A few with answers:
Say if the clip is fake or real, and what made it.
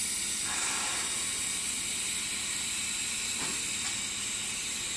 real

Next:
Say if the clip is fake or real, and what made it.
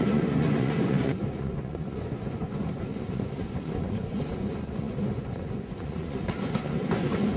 fake, vocoder, Vocos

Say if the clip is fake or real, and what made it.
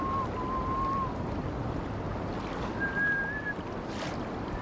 real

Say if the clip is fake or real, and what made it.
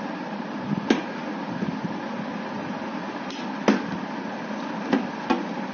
real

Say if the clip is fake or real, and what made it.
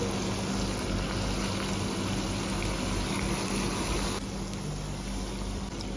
real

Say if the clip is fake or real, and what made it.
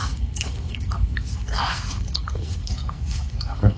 fake, codec, SNAC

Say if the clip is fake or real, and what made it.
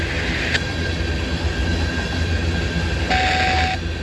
real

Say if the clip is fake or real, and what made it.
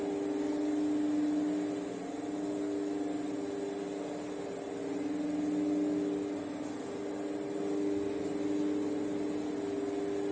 real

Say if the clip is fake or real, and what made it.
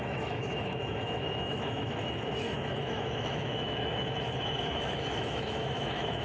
fake, autoencoder, DAC-VAE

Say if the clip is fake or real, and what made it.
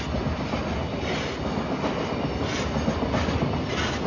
real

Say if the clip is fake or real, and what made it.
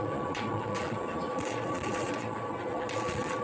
fake, vocoder, Vocos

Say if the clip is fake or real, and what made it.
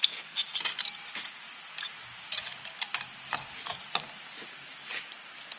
real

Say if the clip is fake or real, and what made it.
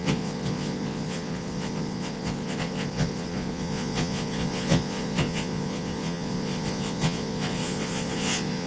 fake, vocoder, Vocos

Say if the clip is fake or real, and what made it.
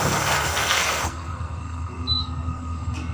fake, codec, SNAC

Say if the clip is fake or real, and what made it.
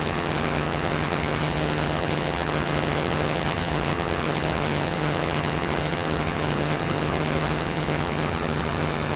fake, vocoder, HiFi-GAN